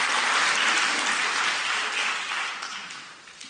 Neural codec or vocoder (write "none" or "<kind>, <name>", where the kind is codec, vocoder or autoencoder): none